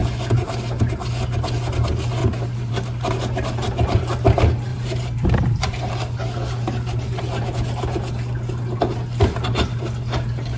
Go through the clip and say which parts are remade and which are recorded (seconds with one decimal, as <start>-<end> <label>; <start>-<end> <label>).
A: 0.0-0.6 remade; 0.6-4.7 recorded; 4.7-5.9 remade; 5.9-10.6 recorded